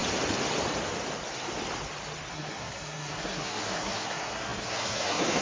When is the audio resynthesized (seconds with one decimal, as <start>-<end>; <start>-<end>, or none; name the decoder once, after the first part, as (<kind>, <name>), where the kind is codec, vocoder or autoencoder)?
2.3-5.4 (codec, SNAC)